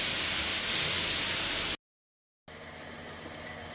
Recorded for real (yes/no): yes